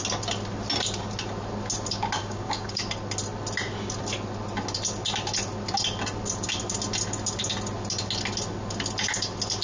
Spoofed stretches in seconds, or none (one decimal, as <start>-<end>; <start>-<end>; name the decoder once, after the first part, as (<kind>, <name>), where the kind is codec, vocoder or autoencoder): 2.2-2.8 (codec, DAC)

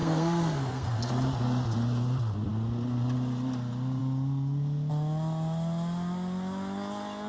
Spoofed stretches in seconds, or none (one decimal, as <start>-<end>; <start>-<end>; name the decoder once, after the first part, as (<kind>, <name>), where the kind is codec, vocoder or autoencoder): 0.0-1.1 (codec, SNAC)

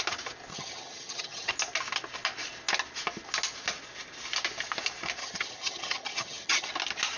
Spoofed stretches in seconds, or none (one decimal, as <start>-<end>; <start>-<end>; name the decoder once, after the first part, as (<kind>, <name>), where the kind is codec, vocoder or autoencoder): 0.5-1.5 (vocoder, HiFi-GAN); 5.2-6.7